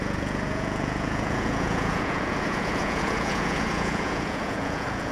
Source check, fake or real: fake